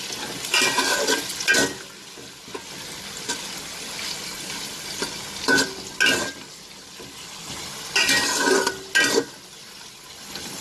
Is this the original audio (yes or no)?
yes